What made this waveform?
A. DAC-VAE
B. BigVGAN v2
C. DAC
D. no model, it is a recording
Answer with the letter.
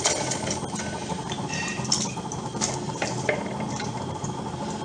B